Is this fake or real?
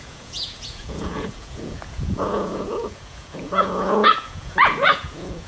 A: fake